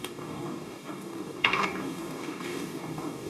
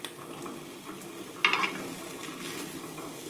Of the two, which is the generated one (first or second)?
first